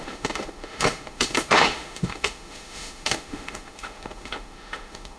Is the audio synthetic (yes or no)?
yes